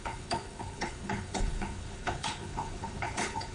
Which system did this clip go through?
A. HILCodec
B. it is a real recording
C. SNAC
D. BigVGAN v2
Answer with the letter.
A